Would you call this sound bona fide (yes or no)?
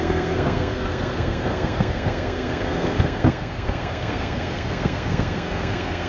no